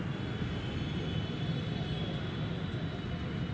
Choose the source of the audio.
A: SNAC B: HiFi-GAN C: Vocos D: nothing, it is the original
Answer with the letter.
D